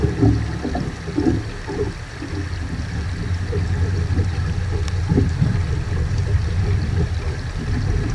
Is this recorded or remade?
recorded